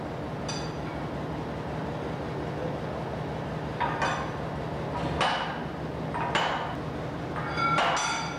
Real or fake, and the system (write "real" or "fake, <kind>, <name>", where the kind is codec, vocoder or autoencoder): real